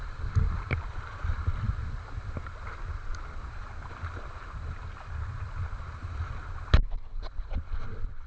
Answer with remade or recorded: recorded